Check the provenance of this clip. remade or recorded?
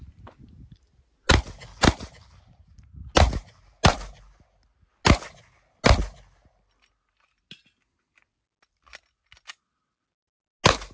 recorded